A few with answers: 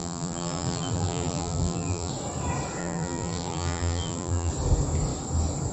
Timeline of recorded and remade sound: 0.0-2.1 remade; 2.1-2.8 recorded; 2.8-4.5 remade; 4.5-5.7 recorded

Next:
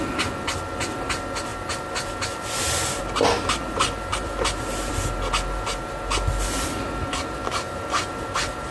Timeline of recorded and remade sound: 0.0-4.1 recorded; 4.1-4.9 remade; 4.9-8.7 recorded

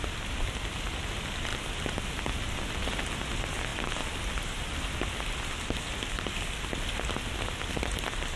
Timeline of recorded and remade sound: 0.0-1.5 recorded; 1.5-2.7 remade; 2.7-3.7 recorded; 3.7-4.8 remade; 4.8-8.4 recorded

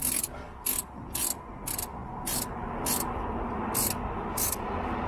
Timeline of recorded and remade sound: 0.0-5.1 recorded